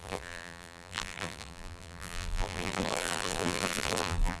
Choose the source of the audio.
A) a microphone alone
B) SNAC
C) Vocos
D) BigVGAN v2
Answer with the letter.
D